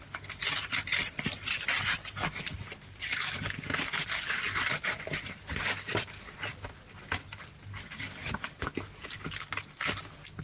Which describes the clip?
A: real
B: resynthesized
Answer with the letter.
A